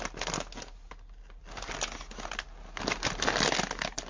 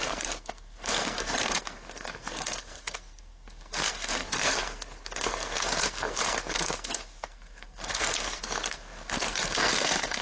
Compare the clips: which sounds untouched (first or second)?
first